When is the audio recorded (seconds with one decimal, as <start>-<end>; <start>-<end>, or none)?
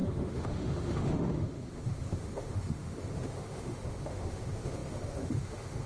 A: none